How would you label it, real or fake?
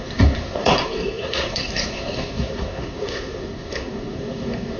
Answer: fake